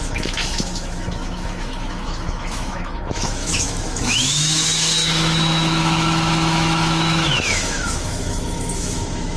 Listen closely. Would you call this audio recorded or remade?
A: remade